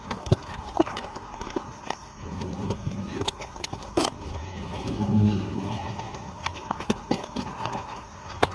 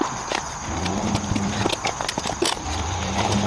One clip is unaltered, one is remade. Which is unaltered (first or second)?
second